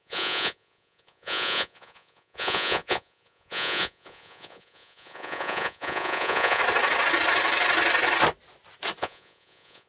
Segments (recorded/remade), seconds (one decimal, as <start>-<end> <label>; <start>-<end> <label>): 0.0-6.6 remade; 6.6-9.0 recorded; 9.0-9.9 remade